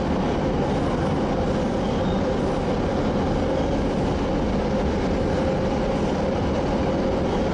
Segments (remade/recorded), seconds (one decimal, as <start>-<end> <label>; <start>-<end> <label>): 0.0-7.5 recorded